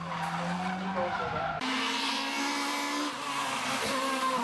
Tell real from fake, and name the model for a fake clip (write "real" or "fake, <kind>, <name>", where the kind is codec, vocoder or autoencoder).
real